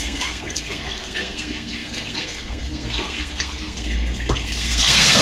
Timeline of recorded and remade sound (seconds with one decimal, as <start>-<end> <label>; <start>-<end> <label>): 0.0-5.2 remade